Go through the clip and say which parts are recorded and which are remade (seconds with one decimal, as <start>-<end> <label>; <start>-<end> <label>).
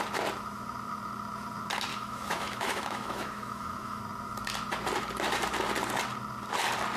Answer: 0.0-1.9 recorded; 1.9-4.0 remade; 4.0-7.0 recorded